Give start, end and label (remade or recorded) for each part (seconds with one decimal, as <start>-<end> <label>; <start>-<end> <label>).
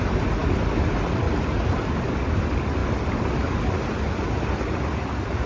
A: 0.0-5.5 recorded